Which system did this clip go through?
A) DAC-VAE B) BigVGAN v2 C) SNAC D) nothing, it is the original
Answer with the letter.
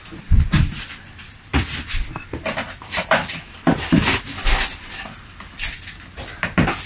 D